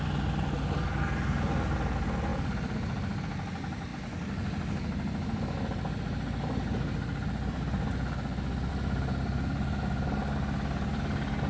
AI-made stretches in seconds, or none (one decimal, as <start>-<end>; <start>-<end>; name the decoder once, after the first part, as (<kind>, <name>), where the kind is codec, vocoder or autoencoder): 2.3-3.2 (vocoder, BigVGAN v2)